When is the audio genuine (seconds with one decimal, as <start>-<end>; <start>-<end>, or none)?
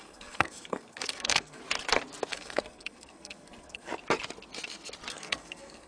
1.6-2.3; 3.9-5.1